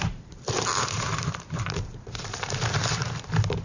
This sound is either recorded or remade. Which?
remade